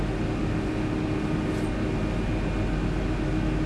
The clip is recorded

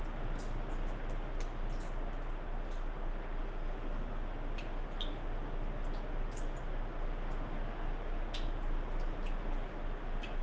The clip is recorded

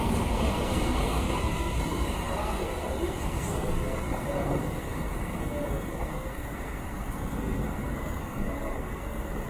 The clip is remade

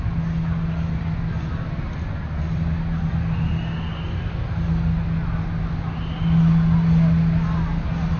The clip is recorded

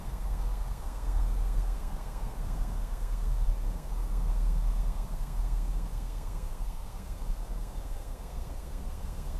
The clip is remade